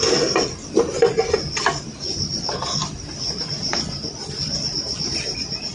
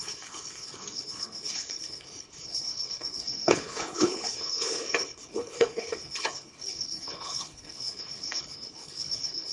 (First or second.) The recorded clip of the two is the first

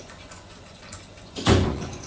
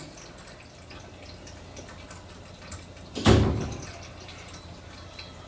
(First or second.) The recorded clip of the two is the second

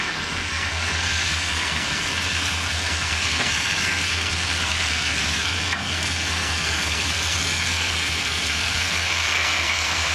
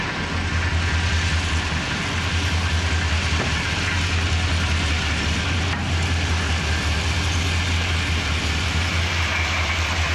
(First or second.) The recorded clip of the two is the second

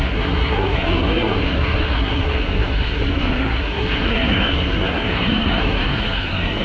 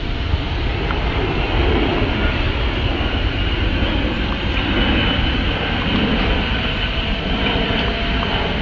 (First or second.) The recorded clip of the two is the second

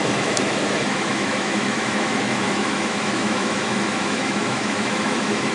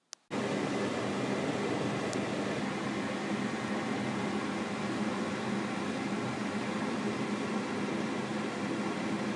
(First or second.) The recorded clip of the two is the second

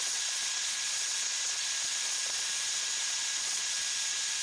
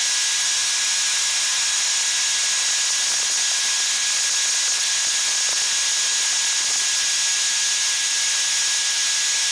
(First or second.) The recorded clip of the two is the second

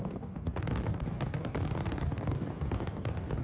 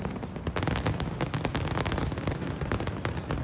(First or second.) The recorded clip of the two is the second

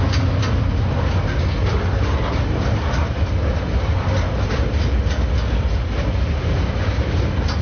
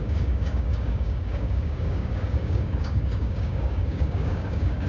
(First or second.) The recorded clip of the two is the first